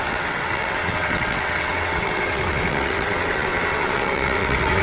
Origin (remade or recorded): remade